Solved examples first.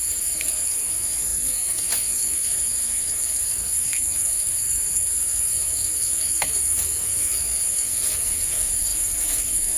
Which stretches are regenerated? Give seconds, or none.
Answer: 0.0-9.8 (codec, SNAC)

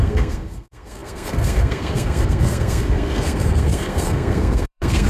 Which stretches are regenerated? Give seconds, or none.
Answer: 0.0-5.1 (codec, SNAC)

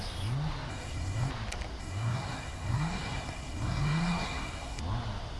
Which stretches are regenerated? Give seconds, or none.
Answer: 0.7-1.3 (codec, SNAC); 1.8-4.8

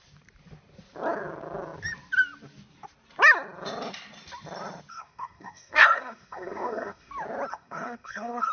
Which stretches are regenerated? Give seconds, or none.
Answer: 4.9-7.1 (codec, SNAC); 7.5-8.5

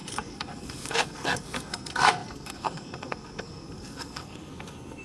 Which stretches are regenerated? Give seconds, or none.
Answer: 0.0-5.0 (codec, SNAC)